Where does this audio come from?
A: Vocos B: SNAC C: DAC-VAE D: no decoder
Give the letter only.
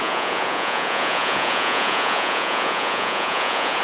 A